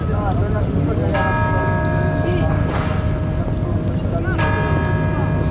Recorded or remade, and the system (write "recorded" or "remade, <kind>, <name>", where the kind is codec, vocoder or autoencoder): recorded